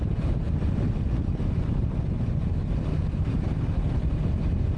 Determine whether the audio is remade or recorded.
recorded